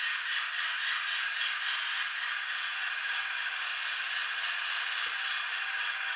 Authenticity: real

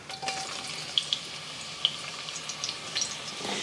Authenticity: real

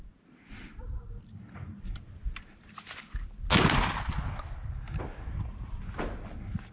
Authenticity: real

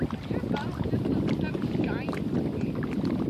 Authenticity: real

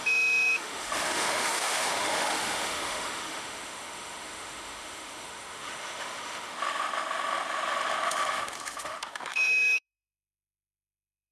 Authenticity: fake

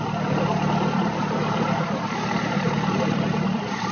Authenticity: fake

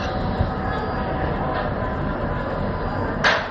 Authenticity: real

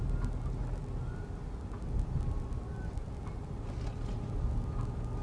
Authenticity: real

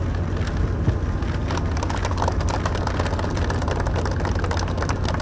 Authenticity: real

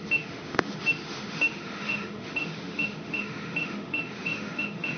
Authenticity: fake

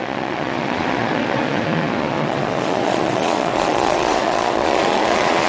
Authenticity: fake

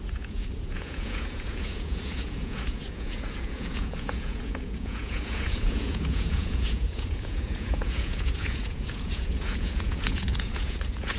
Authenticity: fake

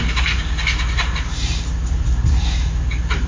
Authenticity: real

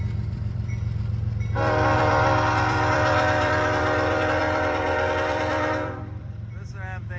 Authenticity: fake